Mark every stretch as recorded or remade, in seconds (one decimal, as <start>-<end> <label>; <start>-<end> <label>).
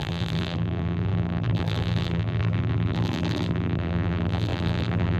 0.0-5.2 remade